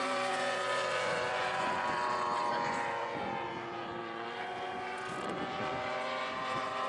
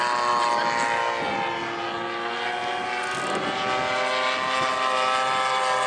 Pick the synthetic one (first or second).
first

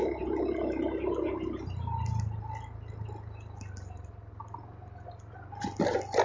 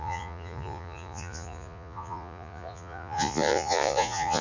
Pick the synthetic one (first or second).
second